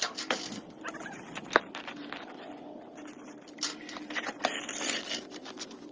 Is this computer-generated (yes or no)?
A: no